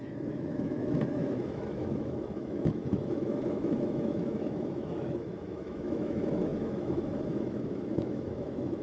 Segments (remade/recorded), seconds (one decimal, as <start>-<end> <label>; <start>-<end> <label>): 0.0-8.8 remade